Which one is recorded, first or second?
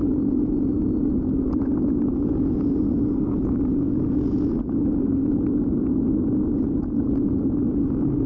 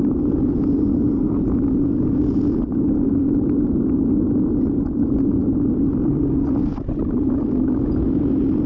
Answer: first